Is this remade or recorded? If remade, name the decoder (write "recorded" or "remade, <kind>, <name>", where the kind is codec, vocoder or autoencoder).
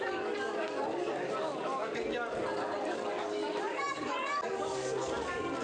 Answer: remade, codec, DAC